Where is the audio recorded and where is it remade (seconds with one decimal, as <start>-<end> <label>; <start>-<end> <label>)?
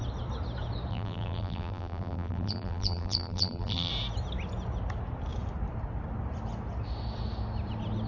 0.0-0.9 recorded; 0.9-3.9 remade; 3.9-8.1 recorded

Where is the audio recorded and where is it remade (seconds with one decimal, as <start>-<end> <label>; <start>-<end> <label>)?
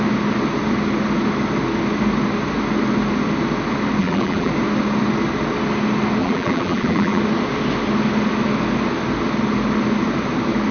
0.0-4.0 recorded; 4.0-4.5 remade; 4.5-6.2 recorded; 6.2-7.2 remade; 7.2-10.7 recorded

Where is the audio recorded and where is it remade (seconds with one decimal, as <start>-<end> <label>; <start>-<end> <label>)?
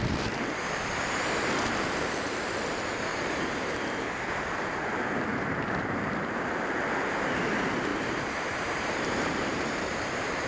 0.0-3.1 recorded; 3.1-3.8 remade; 3.8-5.3 recorded; 5.3-6.4 remade; 6.4-7.9 recorded; 7.9-10.5 remade